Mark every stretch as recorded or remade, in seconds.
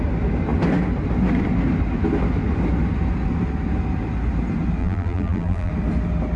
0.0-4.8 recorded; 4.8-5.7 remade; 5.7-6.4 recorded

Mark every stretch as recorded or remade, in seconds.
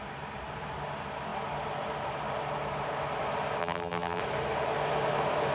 0.0-3.6 recorded; 3.6-4.2 remade; 4.2-5.5 recorded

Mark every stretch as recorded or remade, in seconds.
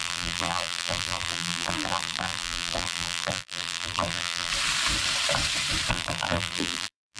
0.0-4.5 remade; 4.5-5.9 recorded; 5.9-7.2 remade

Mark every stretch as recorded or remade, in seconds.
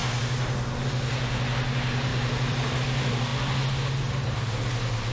0.0-2.1 recorded; 2.1-2.8 remade; 2.8-5.1 recorded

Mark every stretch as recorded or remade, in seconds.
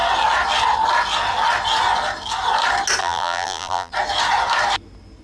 0.0-3.0 recorded; 3.0-3.9 remade; 3.9-5.2 recorded